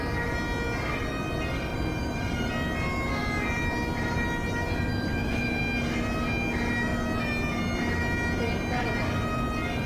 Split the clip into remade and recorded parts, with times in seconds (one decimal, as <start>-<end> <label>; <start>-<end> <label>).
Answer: 0.0-1.7 recorded; 1.7-2.5 remade; 2.5-3.2 recorded; 3.2-5.6 remade; 5.6-9.9 recorded